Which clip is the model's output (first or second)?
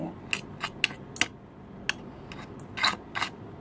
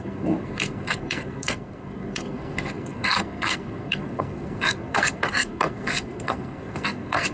second